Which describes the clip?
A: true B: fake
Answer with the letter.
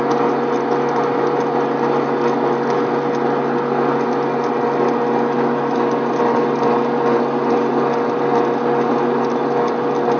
A